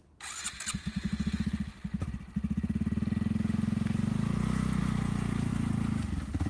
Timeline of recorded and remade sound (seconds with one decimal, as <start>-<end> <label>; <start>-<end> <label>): 0.0-6.5 recorded